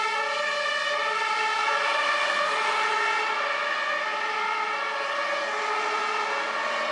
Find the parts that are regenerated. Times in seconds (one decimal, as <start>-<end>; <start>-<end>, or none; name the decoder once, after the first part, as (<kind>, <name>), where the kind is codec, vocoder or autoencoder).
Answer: none

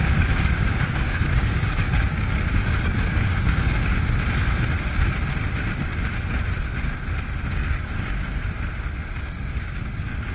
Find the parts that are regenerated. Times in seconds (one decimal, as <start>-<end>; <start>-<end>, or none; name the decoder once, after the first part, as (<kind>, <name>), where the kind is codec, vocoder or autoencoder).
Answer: 0.0-3.8 (codec, DAC); 7.5-8.4; 9.2-10.3

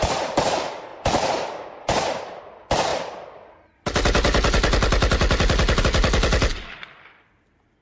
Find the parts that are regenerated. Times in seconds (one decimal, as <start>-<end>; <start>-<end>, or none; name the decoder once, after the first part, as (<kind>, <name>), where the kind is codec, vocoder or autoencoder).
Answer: 6.5-7.3 (vocoder, BigVGAN v2)

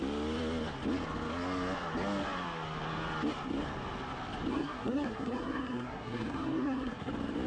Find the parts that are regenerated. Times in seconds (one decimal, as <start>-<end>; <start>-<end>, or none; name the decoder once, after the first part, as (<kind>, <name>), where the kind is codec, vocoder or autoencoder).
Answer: 4.5-7.1 (codec, SNAC)

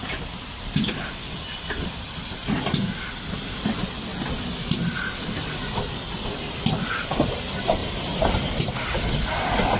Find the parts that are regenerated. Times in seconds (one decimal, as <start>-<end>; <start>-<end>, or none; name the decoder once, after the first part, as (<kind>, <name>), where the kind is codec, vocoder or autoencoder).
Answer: 7.8-8.7 (vocoder, BigVGAN v2)